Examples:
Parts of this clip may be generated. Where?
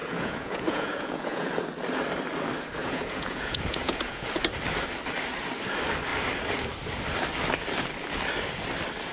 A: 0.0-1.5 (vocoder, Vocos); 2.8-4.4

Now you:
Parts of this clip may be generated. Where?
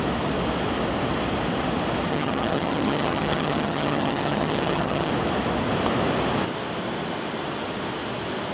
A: 2.1-5.1 (vocoder, HiFi-GAN)